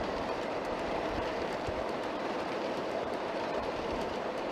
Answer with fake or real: fake